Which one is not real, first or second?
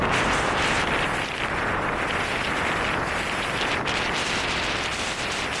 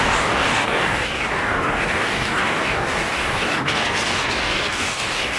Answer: second